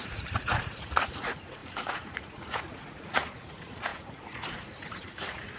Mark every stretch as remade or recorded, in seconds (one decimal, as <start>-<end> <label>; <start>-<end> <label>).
0.0-5.6 remade